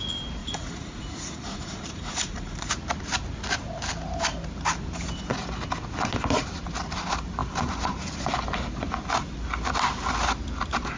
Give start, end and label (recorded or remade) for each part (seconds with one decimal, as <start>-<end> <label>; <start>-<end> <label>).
0.0-0.4 recorded; 0.4-2.7 remade; 2.7-11.0 recorded